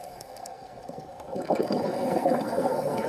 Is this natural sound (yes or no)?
no